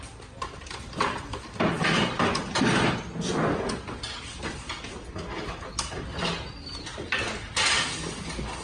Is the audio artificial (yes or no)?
no